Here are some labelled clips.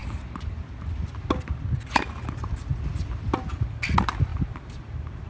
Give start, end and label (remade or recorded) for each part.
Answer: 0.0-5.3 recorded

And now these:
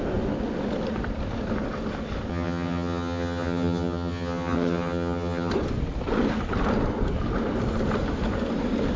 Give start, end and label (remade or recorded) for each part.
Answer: 0.0-2.3 recorded; 2.3-5.5 remade; 5.5-9.0 recorded

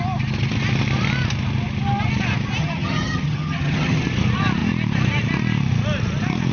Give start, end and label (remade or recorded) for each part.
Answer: 0.0-2.6 recorded; 2.6-4.0 remade; 4.0-6.5 recorded